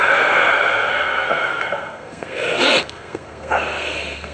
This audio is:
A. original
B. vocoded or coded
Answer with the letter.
B